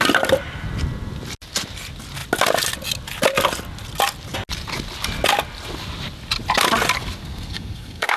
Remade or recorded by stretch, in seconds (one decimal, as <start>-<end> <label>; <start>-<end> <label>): 0.0-7.2 recorded; 7.2-8.2 remade